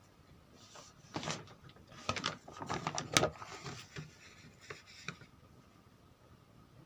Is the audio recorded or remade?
recorded